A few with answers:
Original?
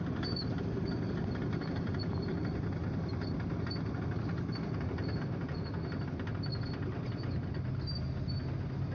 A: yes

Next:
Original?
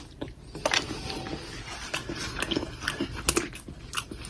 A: yes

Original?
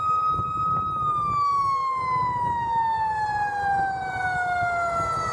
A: yes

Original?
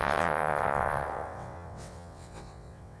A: no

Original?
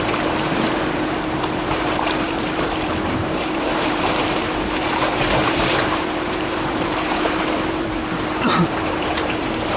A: no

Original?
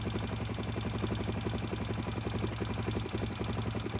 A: yes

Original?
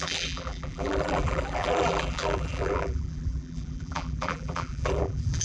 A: no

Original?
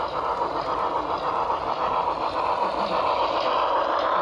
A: yes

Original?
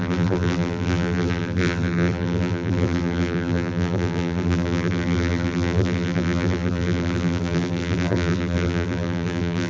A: no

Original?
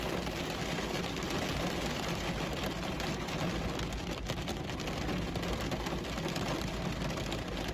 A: yes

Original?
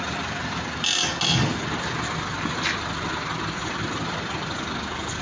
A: yes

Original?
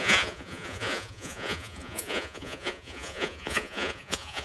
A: no